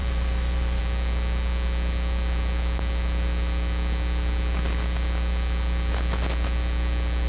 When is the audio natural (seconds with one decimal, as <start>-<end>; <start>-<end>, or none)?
0.8-7.3